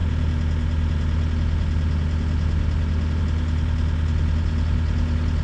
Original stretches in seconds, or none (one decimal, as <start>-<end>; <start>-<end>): 0.0-5.4